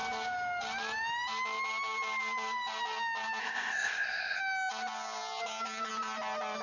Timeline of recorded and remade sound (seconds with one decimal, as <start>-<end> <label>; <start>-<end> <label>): 0.0-3.4 recorded; 3.4-4.4 remade; 4.4-6.6 recorded